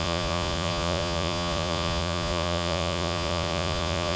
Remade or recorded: remade